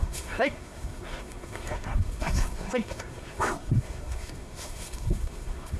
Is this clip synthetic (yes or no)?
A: yes